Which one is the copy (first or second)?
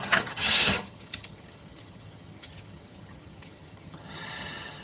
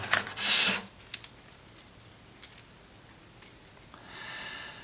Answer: first